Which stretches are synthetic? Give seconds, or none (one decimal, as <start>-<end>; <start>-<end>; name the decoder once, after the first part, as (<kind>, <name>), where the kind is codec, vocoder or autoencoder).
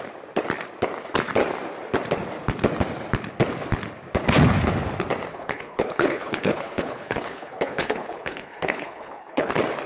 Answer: 5.3-9.5 (codec, HILCodec)